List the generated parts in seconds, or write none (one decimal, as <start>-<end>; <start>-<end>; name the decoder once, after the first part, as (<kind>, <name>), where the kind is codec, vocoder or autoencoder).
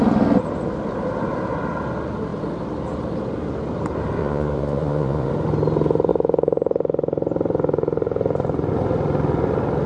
4.2-5.3 (vocoder, Vocos)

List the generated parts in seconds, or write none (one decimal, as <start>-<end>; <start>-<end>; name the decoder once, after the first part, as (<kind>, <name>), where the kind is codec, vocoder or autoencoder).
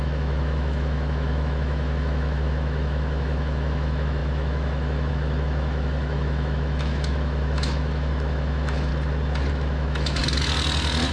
0.0-8.9 (autoencoder, DAC-VAE); 9.5-10.2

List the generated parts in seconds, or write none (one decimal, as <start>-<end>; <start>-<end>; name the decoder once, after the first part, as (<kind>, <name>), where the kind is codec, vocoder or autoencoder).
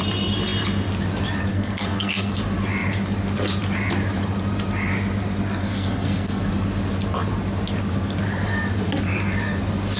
1.5-2.3 (codec, SNAC); 5.6-6.5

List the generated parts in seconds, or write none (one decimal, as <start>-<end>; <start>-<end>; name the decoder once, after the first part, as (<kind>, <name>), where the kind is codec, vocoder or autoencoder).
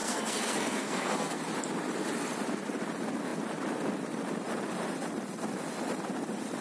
0.0-1.4 (codec, SNAC)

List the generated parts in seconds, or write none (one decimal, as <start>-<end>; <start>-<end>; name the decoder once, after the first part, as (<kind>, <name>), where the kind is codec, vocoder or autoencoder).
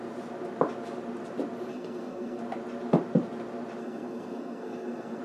1.7-2.4 (codec, SNAC); 3.8-5.2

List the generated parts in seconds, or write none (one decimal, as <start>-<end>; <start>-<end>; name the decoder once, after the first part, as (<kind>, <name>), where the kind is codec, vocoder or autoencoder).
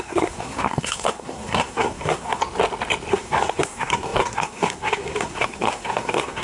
0.0-2.4 (codec, SNAC); 3.1-6.4